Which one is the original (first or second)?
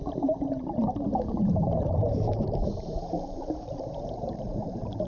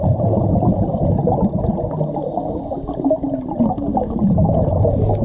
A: second